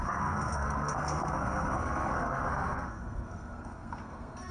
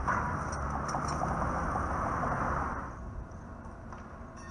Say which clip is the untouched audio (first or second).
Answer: second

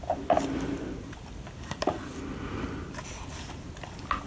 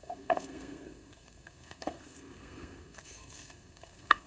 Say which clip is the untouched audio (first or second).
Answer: first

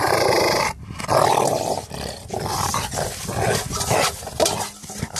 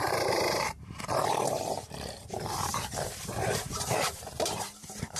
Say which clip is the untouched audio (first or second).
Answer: first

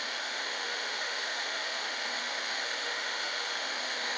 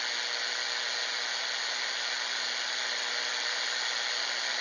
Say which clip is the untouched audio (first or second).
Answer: second